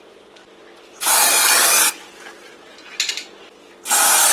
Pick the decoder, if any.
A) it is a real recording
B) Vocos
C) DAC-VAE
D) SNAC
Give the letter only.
A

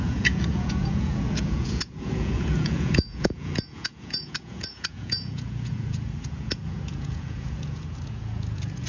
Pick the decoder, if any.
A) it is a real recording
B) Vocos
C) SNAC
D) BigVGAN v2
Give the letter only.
B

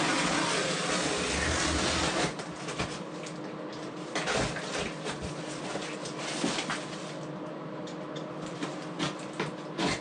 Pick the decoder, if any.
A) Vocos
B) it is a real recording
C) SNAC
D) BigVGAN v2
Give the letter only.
B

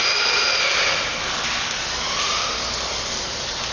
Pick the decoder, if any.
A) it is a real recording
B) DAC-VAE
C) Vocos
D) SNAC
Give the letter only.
A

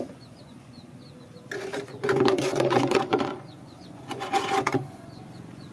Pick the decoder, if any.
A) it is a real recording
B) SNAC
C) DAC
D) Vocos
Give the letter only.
D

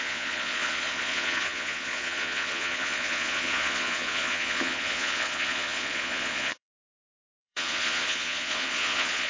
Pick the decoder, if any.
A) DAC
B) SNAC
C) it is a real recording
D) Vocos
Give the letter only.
D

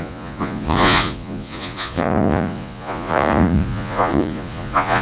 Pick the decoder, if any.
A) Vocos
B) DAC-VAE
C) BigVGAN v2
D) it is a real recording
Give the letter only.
A